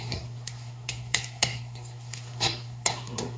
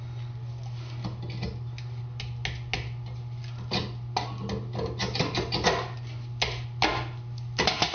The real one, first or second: second